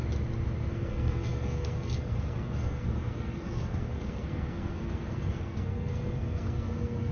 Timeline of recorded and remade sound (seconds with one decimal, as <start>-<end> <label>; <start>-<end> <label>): 0.0-0.7 recorded; 0.7-7.1 remade